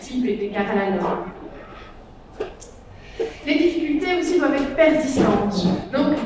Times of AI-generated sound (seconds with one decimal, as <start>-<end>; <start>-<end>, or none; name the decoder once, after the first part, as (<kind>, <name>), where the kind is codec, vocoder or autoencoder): none